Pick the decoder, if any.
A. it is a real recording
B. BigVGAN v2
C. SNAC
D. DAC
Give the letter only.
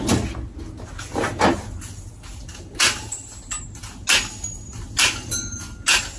A